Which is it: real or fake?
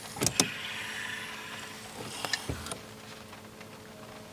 real